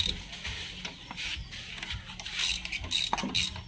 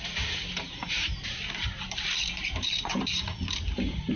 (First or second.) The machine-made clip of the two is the second